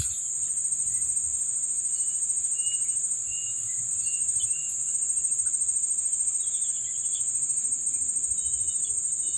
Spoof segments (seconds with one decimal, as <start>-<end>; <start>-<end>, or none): none